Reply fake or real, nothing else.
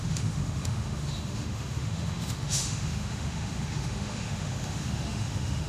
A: fake